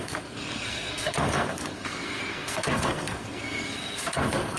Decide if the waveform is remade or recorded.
remade